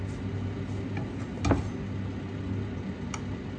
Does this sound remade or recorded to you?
recorded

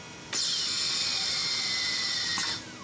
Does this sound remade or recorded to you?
recorded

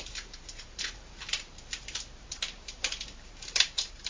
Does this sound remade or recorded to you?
remade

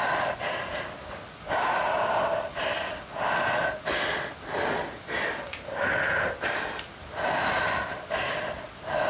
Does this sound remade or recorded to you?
recorded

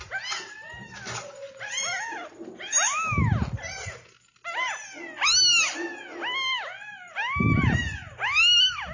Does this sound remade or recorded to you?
recorded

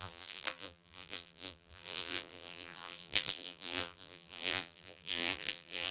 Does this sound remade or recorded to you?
remade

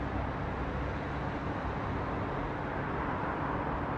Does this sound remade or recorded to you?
recorded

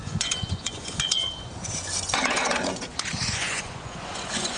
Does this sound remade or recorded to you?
remade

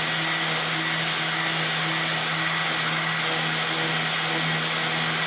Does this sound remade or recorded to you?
recorded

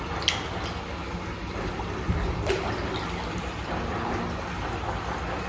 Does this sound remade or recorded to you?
recorded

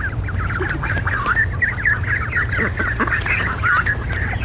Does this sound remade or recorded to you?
recorded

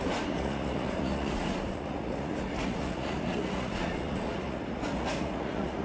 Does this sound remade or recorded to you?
remade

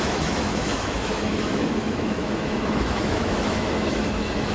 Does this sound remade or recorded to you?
remade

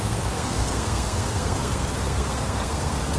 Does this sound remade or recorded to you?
remade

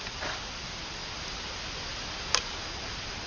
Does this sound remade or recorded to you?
recorded